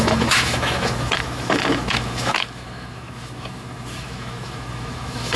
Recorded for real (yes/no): no